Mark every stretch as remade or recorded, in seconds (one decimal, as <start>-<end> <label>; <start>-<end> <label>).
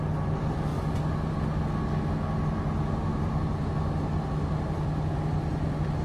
0.0-3.1 recorded; 3.1-3.6 remade; 3.6-6.0 recorded